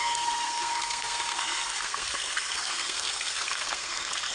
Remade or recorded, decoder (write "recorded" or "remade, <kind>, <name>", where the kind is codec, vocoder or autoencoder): remade, codec, SNAC